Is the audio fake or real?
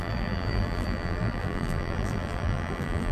fake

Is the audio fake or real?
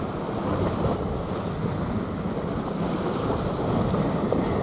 real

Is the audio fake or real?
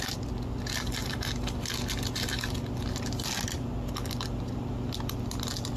real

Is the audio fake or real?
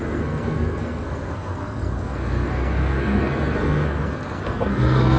fake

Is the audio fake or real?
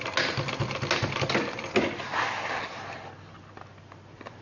real